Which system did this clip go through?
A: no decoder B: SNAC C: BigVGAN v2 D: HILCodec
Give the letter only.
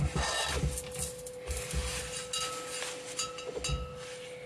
A